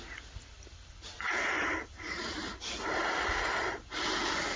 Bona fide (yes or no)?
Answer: yes